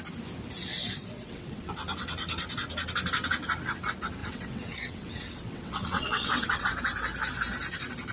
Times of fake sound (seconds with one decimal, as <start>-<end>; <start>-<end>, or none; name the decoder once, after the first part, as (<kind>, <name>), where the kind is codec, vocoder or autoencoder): 0.8-1.7 (vocoder, WaveNeXt); 4.2-6.6

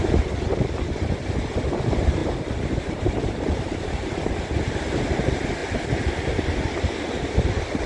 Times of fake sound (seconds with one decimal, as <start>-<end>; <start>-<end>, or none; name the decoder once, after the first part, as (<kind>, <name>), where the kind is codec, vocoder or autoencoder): 2.2-5.0 (vocoder, BigVGAN v2)

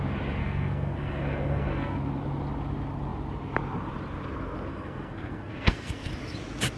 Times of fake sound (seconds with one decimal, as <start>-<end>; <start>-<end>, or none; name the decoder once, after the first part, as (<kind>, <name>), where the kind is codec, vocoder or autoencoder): 0.4-2.0 (codec, SNAC); 4.7-6.1

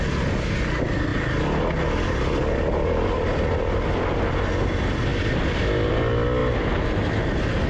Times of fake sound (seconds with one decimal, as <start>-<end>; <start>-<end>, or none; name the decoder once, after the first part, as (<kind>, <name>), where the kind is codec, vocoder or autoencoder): none

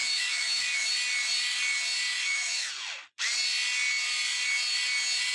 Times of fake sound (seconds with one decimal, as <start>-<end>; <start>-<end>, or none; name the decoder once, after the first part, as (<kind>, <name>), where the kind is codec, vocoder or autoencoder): 0.0-0.9 (autoencoder, DAC-VAE); 2.1-2.7

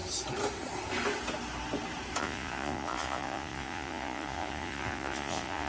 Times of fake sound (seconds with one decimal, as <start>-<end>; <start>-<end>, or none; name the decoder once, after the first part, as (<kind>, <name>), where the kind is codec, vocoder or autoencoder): 2.2-5.7 (vocoder, Vocos)

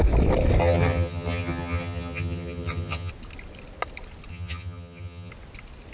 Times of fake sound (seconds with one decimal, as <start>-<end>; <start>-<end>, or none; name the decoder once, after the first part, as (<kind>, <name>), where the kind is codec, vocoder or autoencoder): 0.6-3.1 (vocoder, HiFi-GAN); 4.3-5.3